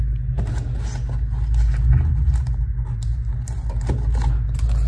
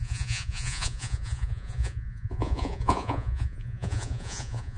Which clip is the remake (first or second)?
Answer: second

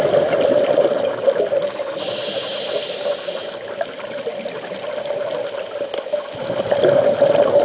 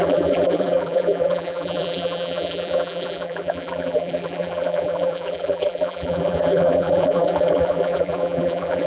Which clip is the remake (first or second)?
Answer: second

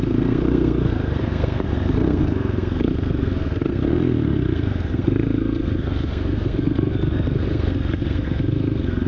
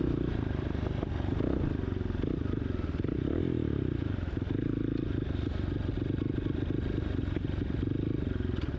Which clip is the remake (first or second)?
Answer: first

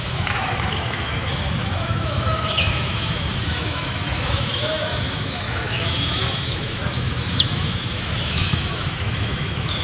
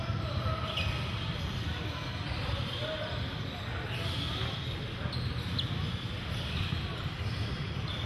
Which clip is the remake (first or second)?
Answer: first